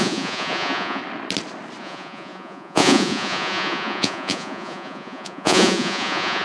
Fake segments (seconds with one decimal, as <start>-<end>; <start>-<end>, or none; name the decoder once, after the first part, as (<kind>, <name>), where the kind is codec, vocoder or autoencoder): 0.0-1.0 (vocoder, Vocos); 1.8-6.4